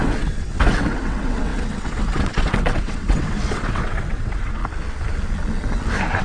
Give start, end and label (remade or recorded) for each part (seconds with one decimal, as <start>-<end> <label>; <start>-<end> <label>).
0.0-4.6 remade; 4.6-6.2 recorded